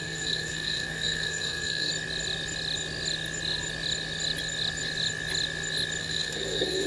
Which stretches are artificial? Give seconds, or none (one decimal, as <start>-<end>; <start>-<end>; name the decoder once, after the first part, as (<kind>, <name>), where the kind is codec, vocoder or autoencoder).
0.0-1.9 (codec, SNAC); 6.0-6.9

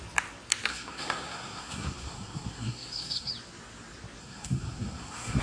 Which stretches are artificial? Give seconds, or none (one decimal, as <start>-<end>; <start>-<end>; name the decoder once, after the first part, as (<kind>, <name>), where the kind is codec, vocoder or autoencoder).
0.7-3.3 (codec, SNAC); 4.2-5.4

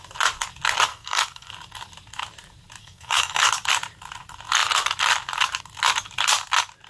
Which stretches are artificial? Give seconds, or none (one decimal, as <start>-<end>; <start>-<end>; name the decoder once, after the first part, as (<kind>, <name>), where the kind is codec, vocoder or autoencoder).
0.9-1.5 (codec, SNAC); 2.8-3.5

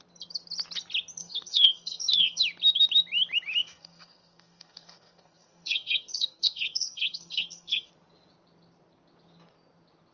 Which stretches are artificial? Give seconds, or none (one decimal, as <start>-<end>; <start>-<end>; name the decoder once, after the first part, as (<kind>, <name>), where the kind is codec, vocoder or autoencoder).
1.2-2.4 (codec, SNAC); 3.6-7.9

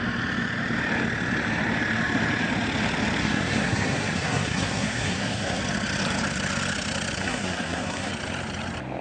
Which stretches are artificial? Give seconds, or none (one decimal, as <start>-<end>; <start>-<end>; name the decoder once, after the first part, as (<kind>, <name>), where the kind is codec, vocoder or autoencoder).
3.2-5.6 (codec, SNAC); 7.2-8.1

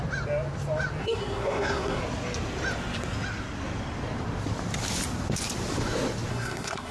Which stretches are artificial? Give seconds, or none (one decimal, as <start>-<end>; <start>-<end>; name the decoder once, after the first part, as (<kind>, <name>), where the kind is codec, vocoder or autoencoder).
1.0-2.0 (codec, SNAC); 6.3-6.9

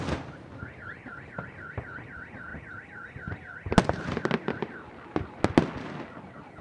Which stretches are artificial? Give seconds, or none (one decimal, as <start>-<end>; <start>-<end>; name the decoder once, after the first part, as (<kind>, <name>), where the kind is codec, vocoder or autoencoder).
none